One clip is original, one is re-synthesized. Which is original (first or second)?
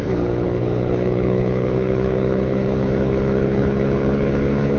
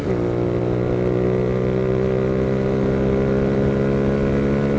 second